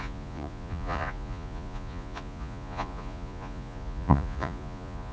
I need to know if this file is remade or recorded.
remade